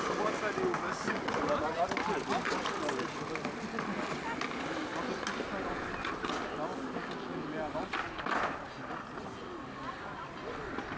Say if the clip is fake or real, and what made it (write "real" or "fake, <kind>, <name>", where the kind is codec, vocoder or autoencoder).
real